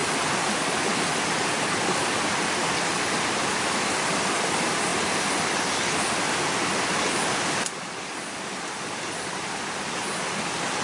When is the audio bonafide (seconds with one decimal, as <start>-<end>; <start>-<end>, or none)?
0.0-10.8